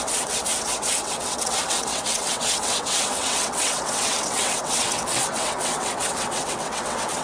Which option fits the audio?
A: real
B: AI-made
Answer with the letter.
B